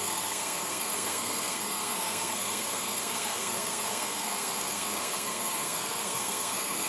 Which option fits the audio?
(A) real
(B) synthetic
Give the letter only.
B